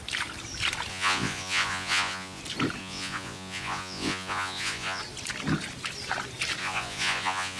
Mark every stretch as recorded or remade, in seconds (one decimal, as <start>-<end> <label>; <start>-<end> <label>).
0.0-0.9 recorded; 0.9-2.4 remade; 2.4-2.8 recorded; 2.8-5.0 remade; 5.0-6.6 recorded; 6.6-7.6 remade

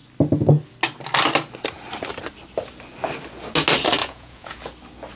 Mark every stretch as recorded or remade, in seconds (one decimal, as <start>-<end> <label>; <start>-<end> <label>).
0.0-4.0 recorded; 4.0-4.6 remade; 4.6-5.2 recorded